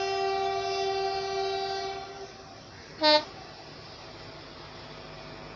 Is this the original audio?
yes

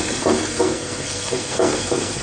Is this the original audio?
no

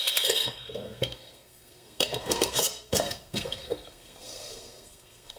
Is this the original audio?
no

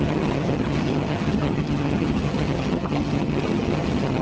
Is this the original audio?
no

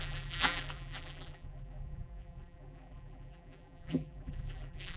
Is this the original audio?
no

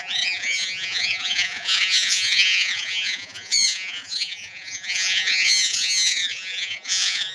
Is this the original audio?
no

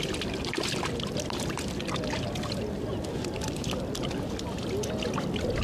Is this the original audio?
yes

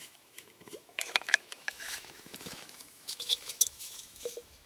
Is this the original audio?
no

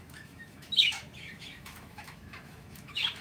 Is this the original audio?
no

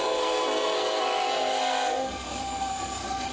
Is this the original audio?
no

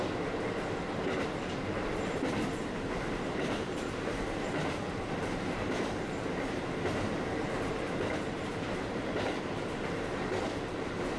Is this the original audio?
no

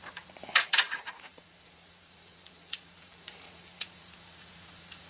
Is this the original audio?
no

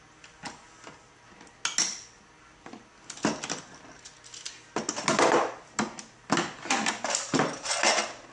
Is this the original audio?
yes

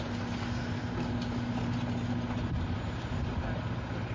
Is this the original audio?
yes